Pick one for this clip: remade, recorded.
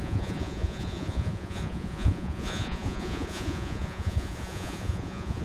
remade